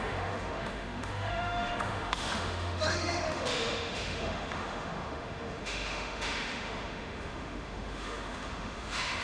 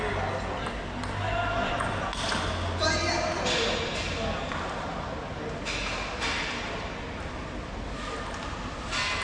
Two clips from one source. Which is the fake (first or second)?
first